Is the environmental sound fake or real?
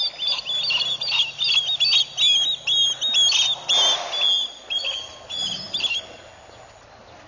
real